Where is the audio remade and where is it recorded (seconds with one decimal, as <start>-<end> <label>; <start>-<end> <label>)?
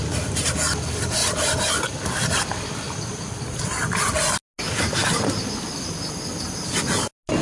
0.0-1.2 recorded; 1.2-3.6 remade; 3.6-7.4 recorded